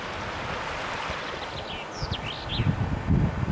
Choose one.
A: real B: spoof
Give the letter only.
A